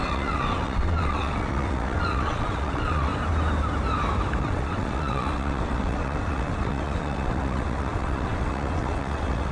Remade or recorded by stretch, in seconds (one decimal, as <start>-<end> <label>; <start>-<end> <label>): 0.0-3.1 remade; 3.1-4.4 recorded; 4.4-9.5 remade